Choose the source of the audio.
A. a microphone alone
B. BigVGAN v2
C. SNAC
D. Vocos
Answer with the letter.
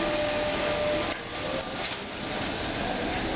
A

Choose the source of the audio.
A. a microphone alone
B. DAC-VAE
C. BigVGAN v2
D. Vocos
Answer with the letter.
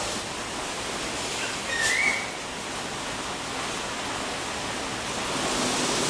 A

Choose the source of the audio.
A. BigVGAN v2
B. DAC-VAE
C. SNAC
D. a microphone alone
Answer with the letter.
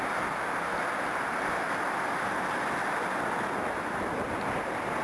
D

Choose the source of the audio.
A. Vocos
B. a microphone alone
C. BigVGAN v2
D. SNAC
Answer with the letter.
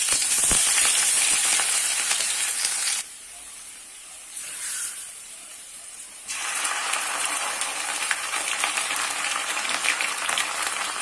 C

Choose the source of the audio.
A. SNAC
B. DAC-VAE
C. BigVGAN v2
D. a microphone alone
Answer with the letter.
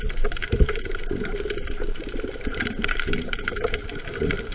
C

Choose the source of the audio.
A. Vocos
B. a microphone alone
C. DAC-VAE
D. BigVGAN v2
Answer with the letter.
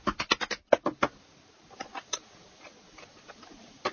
D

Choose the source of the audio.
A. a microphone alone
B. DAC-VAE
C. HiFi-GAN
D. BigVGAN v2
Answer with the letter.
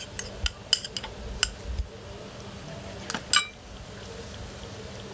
A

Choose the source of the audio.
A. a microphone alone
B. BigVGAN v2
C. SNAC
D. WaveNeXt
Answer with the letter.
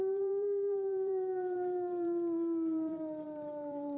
B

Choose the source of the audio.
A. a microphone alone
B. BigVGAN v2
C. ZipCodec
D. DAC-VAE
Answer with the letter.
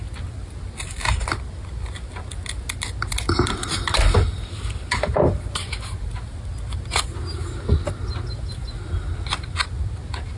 A